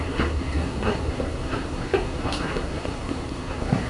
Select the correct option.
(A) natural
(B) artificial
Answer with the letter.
B